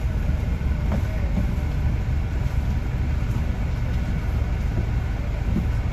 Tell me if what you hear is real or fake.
real